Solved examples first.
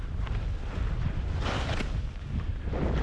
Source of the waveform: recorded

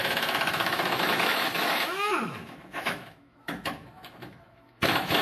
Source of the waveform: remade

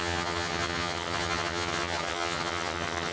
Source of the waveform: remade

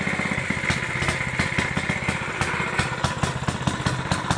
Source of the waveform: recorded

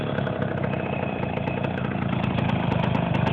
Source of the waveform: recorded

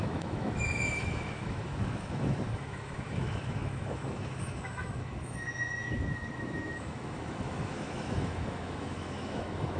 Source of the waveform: remade